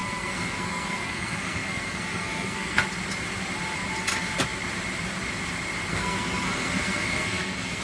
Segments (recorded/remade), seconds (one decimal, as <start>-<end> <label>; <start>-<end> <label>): 0.0-2.8 remade; 2.8-5.9 recorded; 5.9-7.8 remade